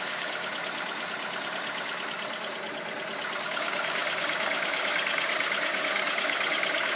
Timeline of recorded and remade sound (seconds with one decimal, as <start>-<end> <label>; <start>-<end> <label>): 0.0-0.5 remade; 0.5-3.4 recorded; 3.4-7.0 remade